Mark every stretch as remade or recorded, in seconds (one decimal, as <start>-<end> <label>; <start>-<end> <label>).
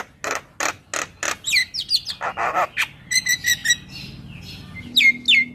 0.0-5.5 recorded